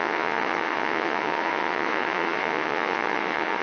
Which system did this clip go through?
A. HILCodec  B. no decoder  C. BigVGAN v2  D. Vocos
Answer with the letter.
D